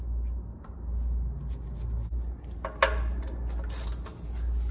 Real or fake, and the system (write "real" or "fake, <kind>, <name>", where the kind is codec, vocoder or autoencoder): real